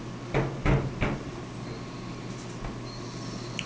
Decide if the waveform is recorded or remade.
recorded